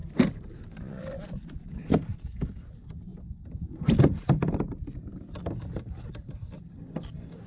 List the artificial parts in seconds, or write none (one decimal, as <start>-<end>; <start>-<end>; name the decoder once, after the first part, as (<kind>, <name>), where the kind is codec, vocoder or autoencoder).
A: 0.0-1.0 (vocoder, BigVGAN v2); 3.1-6.1